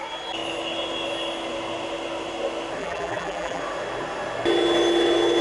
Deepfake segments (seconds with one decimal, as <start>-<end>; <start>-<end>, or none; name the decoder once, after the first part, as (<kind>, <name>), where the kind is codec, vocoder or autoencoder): 2.8-3.6 (vocoder, BigVGAN v2)